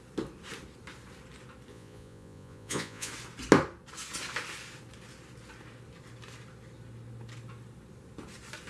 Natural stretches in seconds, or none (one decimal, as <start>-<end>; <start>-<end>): 0.0-1.7; 3.1-8.7